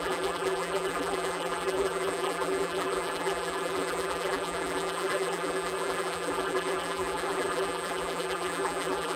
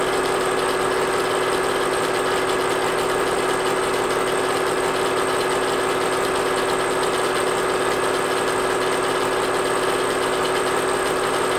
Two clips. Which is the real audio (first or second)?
second